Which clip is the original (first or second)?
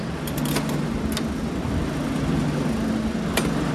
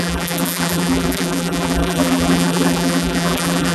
first